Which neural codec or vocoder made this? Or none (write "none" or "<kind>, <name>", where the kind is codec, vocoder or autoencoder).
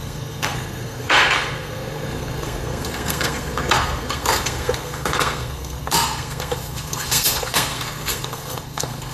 codec, SNAC